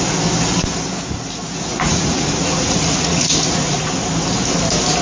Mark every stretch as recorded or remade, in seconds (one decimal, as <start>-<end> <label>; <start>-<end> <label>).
0.0-1.7 recorded; 1.7-3.8 remade; 3.8-5.0 recorded

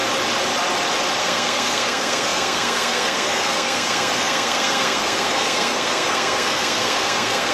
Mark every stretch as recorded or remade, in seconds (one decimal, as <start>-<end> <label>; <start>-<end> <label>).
0.0-1.2 recorded; 1.2-7.5 remade

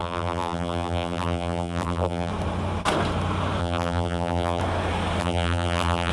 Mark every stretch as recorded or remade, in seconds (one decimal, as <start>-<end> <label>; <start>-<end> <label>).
0.0-2.3 remade; 2.3-3.6 recorded; 3.6-4.6 remade; 4.6-5.2 recorded; 5.2-6.1 remade

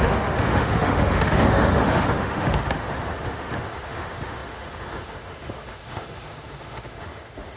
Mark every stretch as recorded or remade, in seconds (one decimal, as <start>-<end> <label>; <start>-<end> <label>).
0.0-7.6 remade